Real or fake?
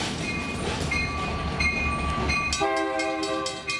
real